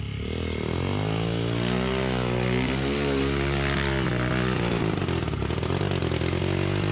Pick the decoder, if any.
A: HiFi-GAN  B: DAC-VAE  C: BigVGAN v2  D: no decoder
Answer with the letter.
D